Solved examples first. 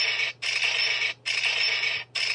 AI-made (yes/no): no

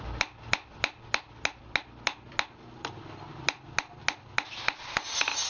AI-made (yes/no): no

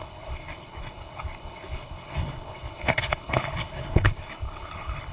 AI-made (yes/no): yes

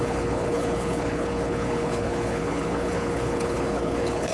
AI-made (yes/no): yes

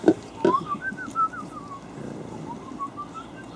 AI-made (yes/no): no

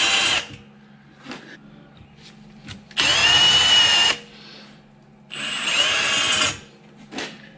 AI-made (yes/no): no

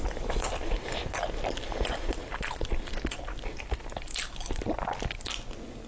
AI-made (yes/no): no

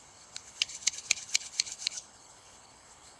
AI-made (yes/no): yes